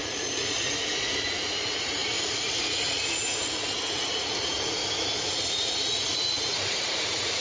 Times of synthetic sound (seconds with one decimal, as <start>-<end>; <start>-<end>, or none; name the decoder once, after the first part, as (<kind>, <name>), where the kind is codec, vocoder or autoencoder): 0.0-4.8 (vocoder, Vocos); 5.3-7.4